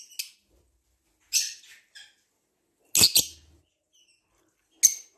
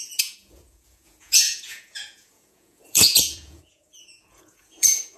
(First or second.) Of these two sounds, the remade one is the second